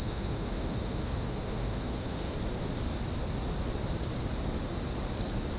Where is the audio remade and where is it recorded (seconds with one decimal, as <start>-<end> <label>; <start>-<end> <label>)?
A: 0.0-2.3 remade; 2.3-5.6 recorded